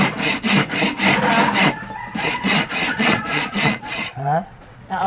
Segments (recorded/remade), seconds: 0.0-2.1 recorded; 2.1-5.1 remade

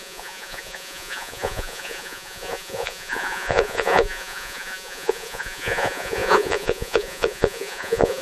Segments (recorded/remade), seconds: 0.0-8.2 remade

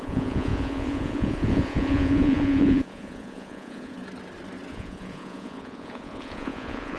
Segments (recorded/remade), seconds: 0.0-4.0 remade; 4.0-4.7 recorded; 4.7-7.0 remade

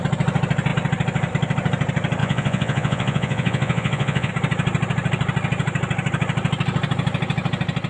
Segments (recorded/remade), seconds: 0.0-2.2 recorded; 2.2-4.3 remade; 4.3-7.9 recorded

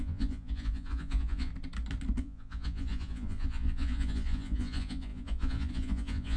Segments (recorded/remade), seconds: 0.0-1.5 remade; 1.5-2.2 recorded; 2.2-6.4 remade

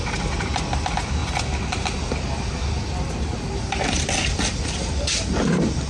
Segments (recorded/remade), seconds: 0.0-5.9 recorded

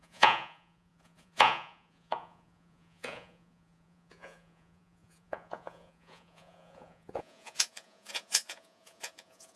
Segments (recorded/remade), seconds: 0.0-9.6 remade

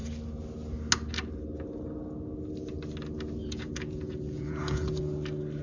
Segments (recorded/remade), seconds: 0.0-3.4 recorded; 3.4-5.0 remade; 5.0-5.6 recorded